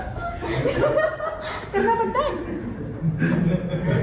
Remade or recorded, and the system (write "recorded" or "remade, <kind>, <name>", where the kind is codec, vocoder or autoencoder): recorded